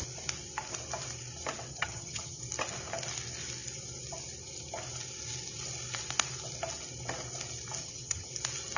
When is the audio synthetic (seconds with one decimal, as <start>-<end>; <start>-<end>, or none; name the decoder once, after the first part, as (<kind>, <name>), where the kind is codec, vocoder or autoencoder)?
1.7-2.4 (vocoder, HiFi-GAN); 7.8-8.3